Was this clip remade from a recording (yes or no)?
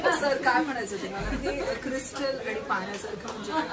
no